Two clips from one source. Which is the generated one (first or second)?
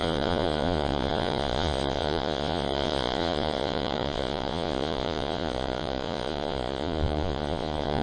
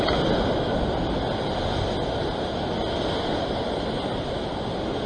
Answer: first